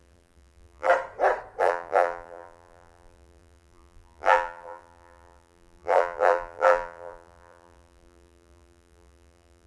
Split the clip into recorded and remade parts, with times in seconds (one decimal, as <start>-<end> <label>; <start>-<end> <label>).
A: 0.0-0.9 remade; 0.9-1.6 recorded; 1.6-9.7 remade